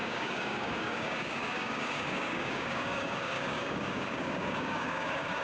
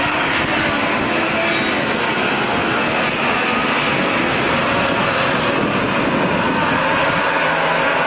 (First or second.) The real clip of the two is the second